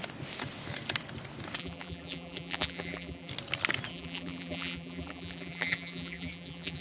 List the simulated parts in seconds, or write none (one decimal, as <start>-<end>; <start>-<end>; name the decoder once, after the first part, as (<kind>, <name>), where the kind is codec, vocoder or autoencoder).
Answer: 1.6-3.3 (vocoder, BigVGAN v2); 3.9-6.8